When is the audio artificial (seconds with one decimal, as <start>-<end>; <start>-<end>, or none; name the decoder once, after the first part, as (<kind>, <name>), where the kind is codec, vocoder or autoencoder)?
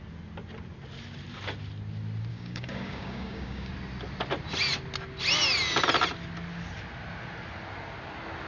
2.3-3.7 (codec, DAC)